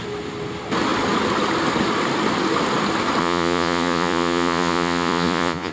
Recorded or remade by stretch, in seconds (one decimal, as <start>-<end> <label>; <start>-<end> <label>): 0.0-3.2 recorded; 3.2-5.7 remade